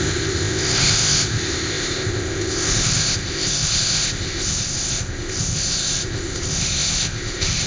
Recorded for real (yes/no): no